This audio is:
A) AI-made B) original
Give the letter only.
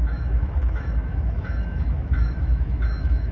A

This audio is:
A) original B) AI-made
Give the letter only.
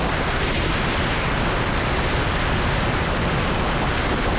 A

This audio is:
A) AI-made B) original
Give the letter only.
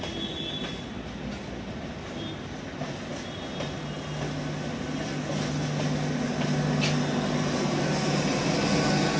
B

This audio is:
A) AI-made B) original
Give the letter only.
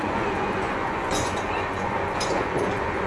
A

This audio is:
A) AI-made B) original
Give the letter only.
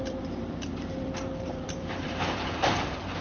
A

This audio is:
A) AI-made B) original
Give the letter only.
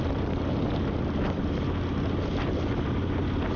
B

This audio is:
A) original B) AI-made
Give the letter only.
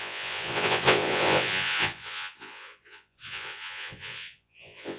B